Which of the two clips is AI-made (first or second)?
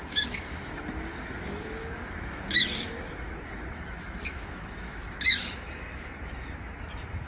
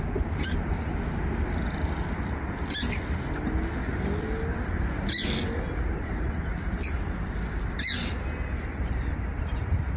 first